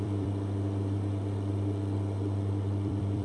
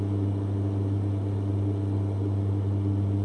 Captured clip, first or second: second